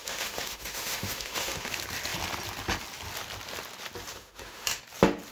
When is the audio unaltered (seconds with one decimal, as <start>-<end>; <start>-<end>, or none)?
1.7-4.1; 4.8-5.3